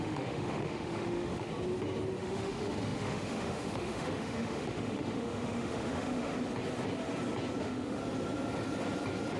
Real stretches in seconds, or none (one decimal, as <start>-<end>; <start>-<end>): 1.5-2.2; 6.3-7.6; 8.0-9.4